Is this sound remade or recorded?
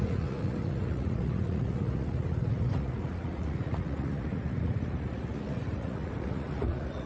remade